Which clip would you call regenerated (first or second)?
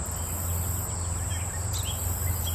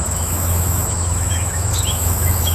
second